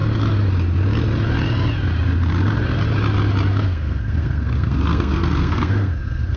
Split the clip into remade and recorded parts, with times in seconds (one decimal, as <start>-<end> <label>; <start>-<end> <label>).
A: 0.0-3.5 recorded; 3.5-6.4 remade